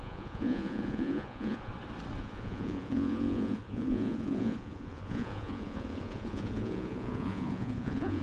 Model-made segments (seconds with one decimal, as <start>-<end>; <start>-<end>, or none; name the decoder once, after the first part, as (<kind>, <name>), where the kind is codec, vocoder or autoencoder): 0.0-1.7 (vocoder, Vocos); 2.2-8.2